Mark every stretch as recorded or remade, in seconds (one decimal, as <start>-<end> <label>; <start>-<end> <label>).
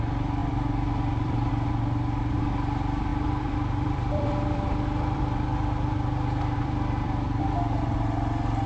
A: 0.0-0.4 recorded; 0.4-1.5 remade; 1.5-3.1 recorded; 3.1-7.4 remade; 7.4-8.7 recorded